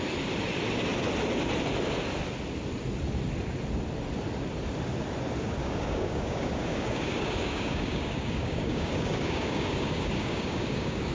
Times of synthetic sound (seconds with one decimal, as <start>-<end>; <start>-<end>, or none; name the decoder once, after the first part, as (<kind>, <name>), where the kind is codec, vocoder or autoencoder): 5.6-11.1 (codec, DAC)